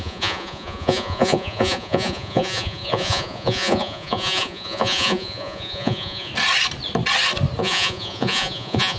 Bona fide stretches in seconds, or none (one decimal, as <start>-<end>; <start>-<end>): 6.3-7.6